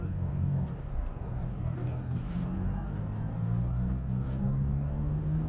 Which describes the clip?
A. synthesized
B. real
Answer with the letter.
A